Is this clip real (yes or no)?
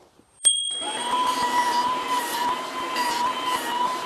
no